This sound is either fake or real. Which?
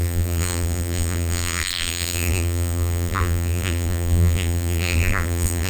fake